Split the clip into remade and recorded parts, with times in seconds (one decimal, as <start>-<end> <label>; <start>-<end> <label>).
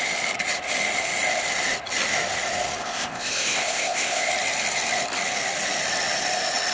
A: 0.0-2.8 recorded; 2.8-4.3 remade; 4.3-6.7 recorded